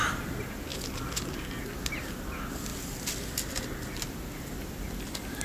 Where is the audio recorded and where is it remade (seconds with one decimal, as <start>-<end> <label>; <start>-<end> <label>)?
0.0-5.4 recorded